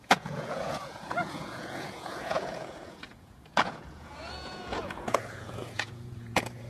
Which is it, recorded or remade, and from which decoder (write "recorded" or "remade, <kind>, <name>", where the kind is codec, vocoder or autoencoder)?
remade, vocoder, Vocos